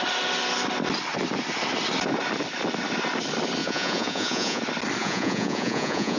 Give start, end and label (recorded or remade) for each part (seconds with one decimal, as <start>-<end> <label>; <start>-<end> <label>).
0.0-3.6 recorded; 3.6-4.6 remade; 4.6-5.0 recorded; 5.0-6.2 remade